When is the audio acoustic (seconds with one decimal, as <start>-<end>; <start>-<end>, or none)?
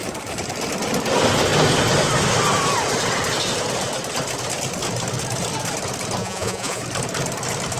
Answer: 0.0-6.2; 6.8-7.8